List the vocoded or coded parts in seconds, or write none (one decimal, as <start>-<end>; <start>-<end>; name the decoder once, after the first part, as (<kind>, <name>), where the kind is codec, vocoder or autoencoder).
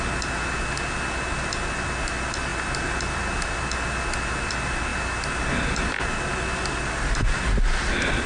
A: none